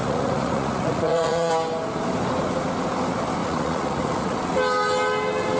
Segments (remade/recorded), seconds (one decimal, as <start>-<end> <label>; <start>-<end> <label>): 0.0-1.5 remade; 1.5-3.4 recorded; 3.4-4.4 remade; 4.4-5.6 recorded

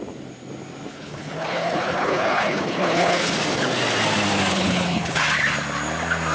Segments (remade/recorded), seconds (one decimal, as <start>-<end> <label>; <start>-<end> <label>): 0.0-0.9 recorded; 0.9-3.3 remade; 3.3-4.5 recorded; 4.5-5.2 remade; 5.2-6.3 recorded

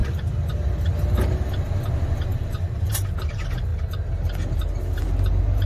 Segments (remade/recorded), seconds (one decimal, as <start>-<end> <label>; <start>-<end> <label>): 0.0-5.7 recorded

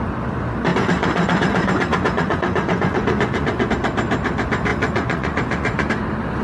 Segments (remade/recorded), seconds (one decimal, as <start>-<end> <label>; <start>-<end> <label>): 0.0-0.7 recorded; 0.7-3.7 remade; 3.7-4.7 recorded; 4.7-5.9 remade; 5.9-6.4 recorded

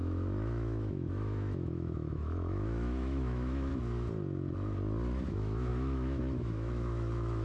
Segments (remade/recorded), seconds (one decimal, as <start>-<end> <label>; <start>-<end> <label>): 0.0-3.7 remade; 3.7-5.3 recorded; 5.3-7.4 remade

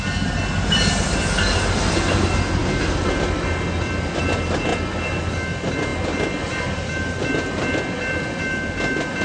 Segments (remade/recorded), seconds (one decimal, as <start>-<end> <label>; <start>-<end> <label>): 0.0-9.2 recorded